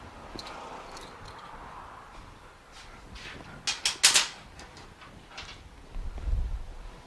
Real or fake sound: real